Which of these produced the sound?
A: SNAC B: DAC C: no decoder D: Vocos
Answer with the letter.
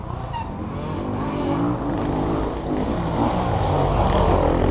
C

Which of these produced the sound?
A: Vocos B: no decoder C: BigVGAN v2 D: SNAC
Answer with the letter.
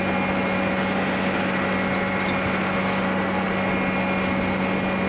B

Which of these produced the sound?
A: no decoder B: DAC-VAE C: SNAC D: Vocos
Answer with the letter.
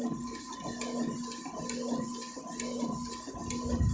A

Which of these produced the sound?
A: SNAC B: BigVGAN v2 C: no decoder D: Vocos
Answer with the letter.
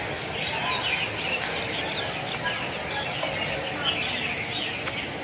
C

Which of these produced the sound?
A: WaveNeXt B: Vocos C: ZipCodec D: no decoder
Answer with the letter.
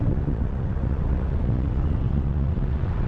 A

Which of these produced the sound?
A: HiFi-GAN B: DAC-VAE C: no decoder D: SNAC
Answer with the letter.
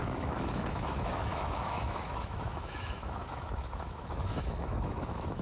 B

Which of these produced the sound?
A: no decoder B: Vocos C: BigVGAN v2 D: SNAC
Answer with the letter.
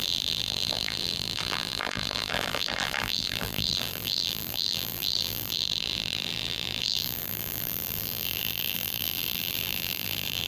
C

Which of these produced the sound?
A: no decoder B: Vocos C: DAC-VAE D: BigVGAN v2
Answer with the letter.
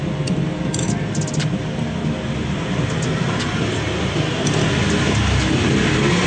A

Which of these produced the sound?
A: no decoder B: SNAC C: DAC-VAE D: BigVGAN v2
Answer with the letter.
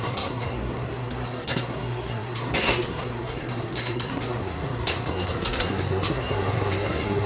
B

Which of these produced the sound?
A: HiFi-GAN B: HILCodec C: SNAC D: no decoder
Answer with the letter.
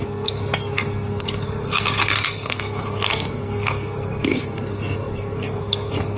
C